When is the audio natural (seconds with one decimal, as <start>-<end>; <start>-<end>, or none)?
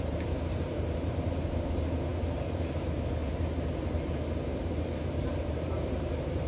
none